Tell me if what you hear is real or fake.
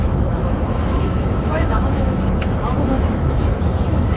fake